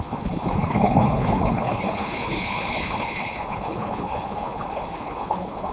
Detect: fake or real fake